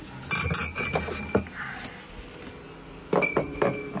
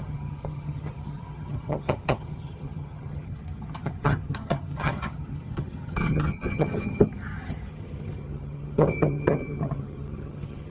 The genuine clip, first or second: first